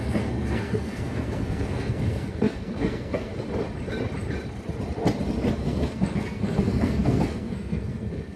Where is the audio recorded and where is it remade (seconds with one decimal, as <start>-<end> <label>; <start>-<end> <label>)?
0.0-3.3 remade; 3.3-5.5 recorded; 5.5-8.4 remade